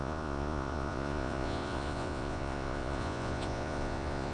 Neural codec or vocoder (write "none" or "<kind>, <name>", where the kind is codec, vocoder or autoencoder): vocoder, Vocos